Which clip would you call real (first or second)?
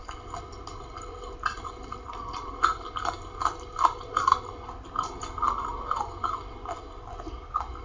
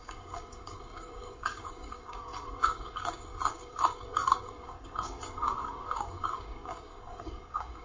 first